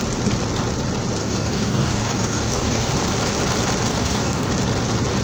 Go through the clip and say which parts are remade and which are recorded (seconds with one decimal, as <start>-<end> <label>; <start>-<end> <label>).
0.0-1.2 recorded; 1.2-2.9 remade; 2.9-3.9 recorded; 3.9-4.5 remade; 4.5-5.2 recorded